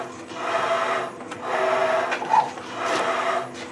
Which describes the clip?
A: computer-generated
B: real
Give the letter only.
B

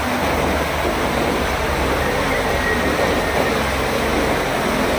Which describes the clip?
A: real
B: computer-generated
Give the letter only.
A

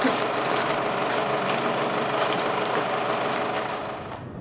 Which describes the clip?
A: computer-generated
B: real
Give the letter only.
B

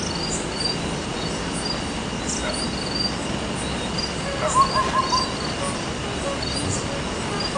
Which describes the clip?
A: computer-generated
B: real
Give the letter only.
B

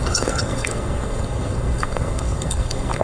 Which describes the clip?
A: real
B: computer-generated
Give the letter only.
B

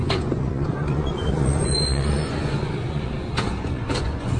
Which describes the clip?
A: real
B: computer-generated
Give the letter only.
B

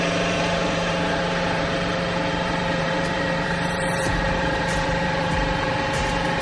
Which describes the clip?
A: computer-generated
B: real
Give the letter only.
A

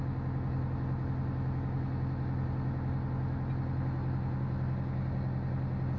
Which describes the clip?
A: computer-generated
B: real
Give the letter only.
B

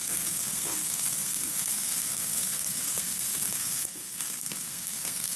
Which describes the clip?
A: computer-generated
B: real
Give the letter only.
A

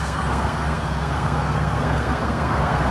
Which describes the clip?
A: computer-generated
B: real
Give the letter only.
A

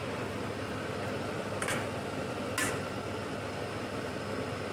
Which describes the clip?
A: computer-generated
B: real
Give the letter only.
B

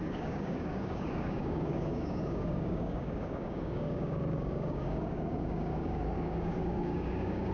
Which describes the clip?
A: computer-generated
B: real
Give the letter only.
A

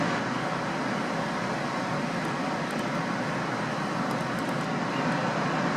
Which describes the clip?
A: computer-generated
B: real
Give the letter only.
B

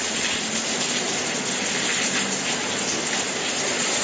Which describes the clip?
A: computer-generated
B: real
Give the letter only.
B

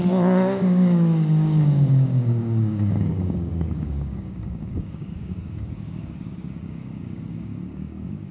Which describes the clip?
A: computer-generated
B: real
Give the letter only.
A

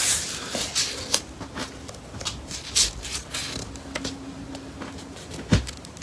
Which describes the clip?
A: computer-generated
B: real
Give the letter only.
B